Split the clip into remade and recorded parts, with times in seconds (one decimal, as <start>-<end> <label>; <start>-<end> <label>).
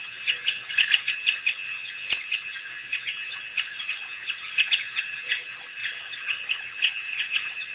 0.0-7.7 recorded